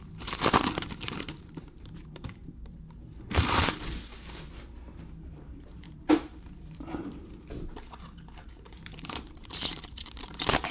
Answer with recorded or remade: remade